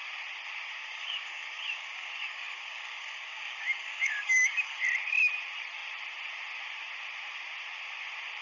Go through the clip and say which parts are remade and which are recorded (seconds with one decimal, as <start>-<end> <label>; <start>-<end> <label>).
0.0-0.8 recorded; 0.8-4.8 remade; 4.8-8.4 recorded